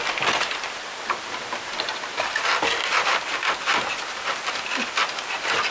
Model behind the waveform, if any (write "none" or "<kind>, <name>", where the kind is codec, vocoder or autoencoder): none